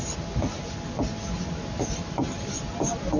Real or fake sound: real